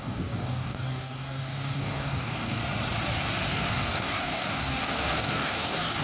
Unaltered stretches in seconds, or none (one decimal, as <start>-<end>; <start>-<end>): 2.6-3.5